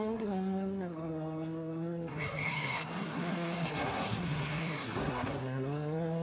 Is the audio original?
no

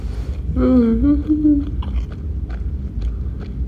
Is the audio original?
yes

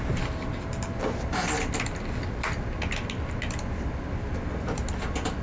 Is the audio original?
yes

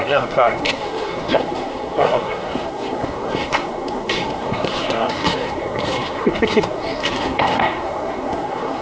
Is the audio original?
no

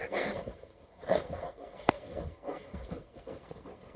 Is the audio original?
no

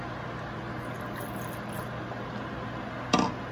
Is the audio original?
yes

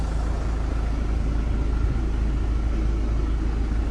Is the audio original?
yes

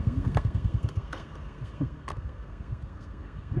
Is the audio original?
no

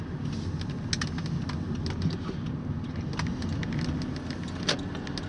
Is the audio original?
yes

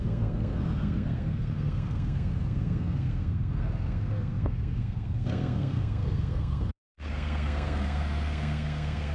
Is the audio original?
no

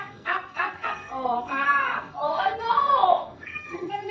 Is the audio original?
no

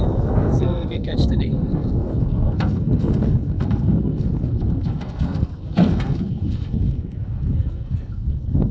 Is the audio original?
no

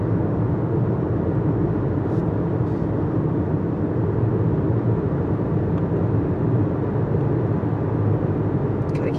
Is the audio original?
yes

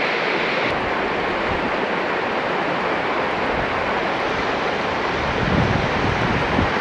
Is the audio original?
yes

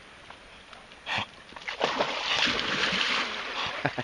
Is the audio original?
yes